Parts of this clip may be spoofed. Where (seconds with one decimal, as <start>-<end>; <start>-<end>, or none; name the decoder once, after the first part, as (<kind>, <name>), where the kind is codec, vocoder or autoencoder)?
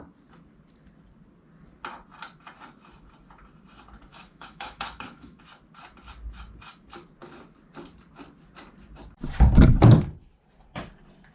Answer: 4.1-5.4 (autoencoder, DAC-VAE)